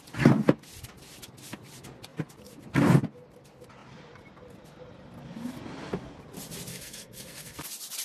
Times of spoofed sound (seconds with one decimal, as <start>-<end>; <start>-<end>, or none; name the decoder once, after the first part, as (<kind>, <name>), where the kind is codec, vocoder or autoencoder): 6.7-7.6 (codec, SNAC)